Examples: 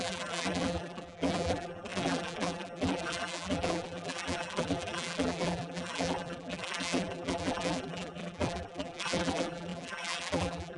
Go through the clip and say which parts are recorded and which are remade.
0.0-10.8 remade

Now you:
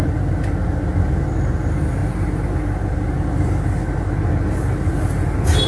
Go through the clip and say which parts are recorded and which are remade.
0.0-5.7 recorded